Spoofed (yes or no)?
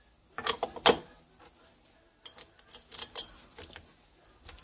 no